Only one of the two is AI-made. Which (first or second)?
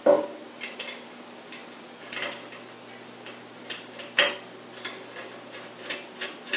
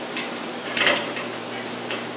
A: second